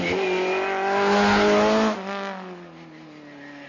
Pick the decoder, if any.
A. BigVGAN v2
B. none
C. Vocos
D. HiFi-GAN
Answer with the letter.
B